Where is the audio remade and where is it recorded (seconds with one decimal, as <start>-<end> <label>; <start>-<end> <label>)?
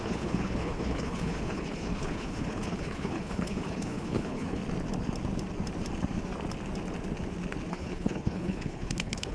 0.0-4.6 remade; 4.6-7.7 recorded; 7.7-9.3 remade